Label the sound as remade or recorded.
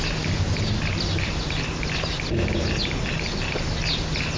recorded